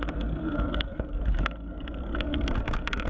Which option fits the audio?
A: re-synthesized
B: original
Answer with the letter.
A